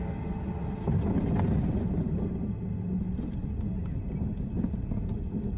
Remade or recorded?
recorded